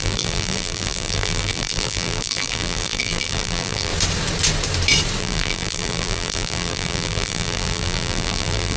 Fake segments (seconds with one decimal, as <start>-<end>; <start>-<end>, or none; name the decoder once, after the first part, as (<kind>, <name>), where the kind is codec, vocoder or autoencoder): 0.0-3.9 (vocoder, BigVGAN v2); 5.2-8.8